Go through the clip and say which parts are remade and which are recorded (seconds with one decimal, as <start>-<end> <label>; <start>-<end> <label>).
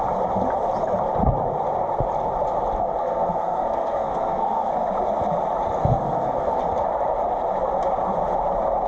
0.0-3.0 recorded; 3.0-4.7 remade; 4.7-5.8 recorded; 5.8-6.6 remade; 6.6-8.9 recorded